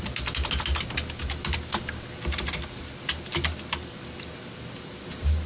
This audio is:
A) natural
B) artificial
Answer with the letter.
A